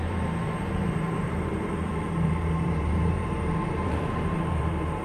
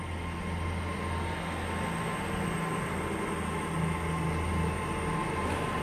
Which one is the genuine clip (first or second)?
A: second